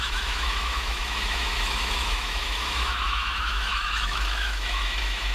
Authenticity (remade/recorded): remade